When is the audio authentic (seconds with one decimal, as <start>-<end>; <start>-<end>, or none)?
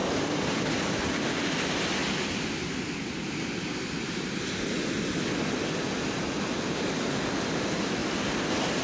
1.3-8.8